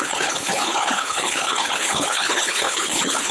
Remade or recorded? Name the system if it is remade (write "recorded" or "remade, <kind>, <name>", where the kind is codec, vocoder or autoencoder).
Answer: remade, codec, HILCodec